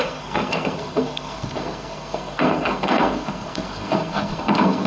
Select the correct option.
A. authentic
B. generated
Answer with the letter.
B